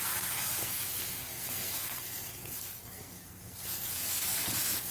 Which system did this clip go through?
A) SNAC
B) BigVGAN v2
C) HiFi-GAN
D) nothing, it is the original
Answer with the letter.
A